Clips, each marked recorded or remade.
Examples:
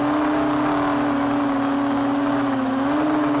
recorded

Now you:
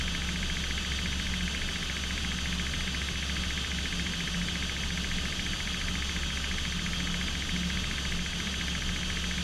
recorded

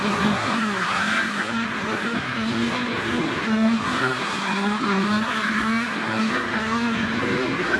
remade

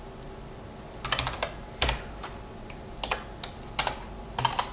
recorded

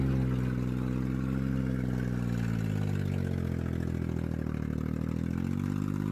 recorded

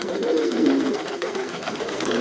remade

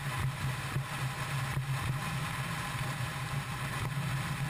recorded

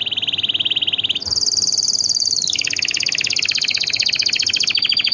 recorded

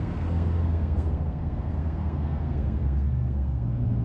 remade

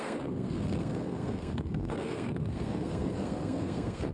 remade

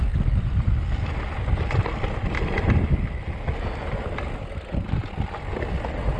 recorded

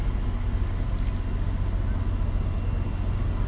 recorded